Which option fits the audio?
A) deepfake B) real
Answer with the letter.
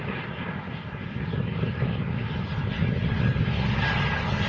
B